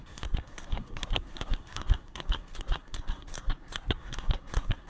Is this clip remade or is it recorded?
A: remade